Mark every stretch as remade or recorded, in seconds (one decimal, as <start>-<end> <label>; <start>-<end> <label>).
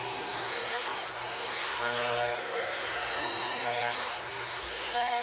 0.0-5.2 remade